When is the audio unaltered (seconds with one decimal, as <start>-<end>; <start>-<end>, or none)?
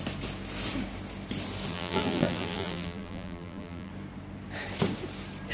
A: 0.0-1.7; 3.9-5.5